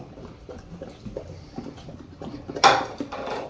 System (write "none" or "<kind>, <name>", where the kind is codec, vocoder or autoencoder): none